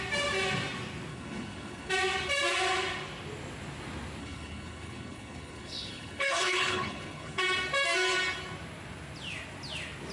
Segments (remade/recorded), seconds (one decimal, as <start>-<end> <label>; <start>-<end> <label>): 0.0-1.1 recorded; 1.1-1.9 remade; 1.9-4.2 recorded; 4.2-7.4 remade; 7.4-10.1 recorded